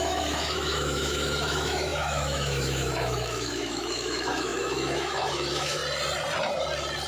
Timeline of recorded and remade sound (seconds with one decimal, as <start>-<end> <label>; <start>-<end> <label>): 0.0-5.8 remade; 5.8-7.1 recorded